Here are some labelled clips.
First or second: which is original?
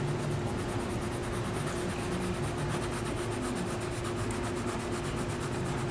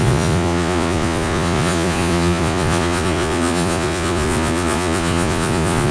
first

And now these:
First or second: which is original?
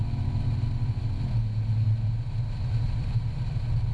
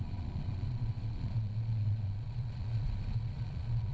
first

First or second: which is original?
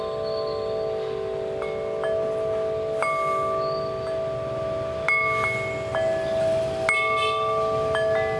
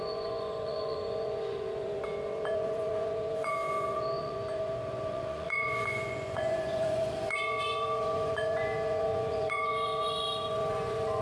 first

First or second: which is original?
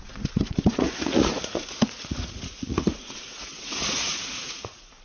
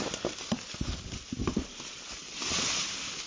second